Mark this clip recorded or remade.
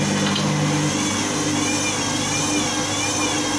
recorded